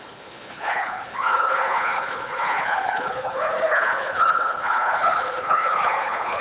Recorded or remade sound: remade